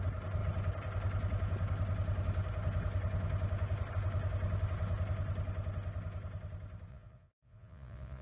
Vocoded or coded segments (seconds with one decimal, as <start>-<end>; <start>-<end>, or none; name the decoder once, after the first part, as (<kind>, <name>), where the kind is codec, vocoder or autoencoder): 6.9-8.2 (vocoder, Vocos)